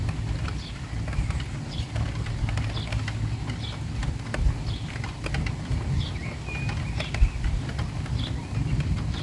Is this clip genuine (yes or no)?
yes